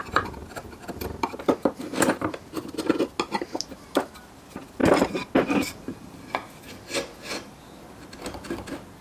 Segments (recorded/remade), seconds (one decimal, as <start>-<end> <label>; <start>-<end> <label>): 0.0-0.4 recorded; 0.4-1.4 remade; 1.4-9.0 recorded